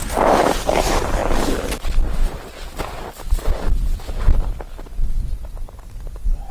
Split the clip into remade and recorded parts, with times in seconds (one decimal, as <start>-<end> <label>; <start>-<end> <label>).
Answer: 0.0-6.5 recorded